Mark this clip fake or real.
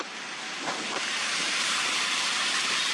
real